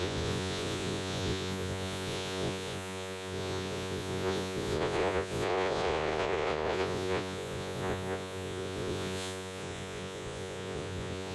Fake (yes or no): yes